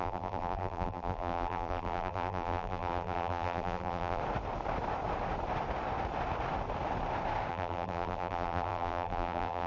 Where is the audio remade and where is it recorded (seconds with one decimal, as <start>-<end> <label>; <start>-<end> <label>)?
0.0-4.2 remade; 4.2-7.5 recorded; 7.5-9.7 remade